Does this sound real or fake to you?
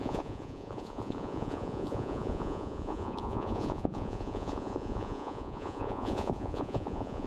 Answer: fake